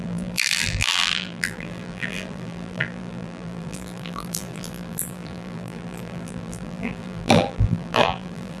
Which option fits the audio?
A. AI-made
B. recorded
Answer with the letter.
A